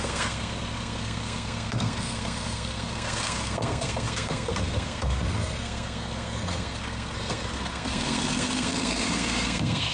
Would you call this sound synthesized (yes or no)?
yes